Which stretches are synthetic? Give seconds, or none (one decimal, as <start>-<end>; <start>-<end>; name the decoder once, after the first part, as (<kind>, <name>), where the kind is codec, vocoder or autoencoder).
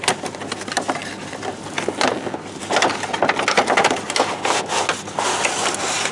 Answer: none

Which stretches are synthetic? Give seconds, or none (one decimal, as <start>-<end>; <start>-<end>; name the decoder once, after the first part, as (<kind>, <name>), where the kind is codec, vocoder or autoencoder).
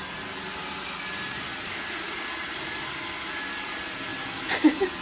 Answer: none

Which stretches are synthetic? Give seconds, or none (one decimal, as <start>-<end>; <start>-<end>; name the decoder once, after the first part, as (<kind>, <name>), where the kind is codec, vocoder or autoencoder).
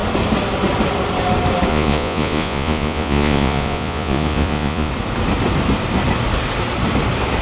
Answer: 1.7-4.9 (vocoder, Vocos)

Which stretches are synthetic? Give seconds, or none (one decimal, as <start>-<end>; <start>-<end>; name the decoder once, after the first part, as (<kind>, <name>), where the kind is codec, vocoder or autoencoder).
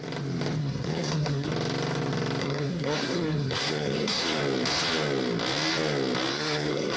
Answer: 0.6-1.5 (codec, SNAC); 2.4-4.4; 6.3-7.0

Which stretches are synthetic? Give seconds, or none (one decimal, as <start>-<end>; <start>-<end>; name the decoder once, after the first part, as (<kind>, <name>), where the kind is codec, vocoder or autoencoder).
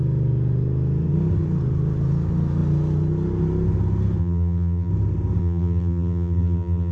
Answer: 4.2-4.9 (vocoder, BigVGAN v2); 5.4-6.9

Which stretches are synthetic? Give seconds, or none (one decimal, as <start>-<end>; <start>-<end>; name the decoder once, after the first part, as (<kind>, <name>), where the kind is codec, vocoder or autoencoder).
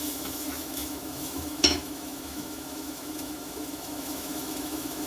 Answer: 0.0-5.1 (autoencoder, DAC-VAE)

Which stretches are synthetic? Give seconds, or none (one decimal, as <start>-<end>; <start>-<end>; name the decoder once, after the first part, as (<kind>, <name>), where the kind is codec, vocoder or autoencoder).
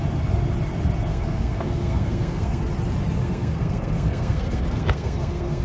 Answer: 1.1-2.6 (codec, SNAC); 3.2-5.6